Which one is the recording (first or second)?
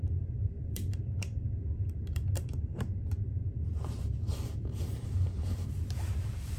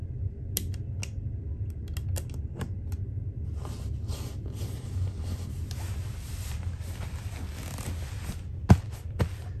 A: second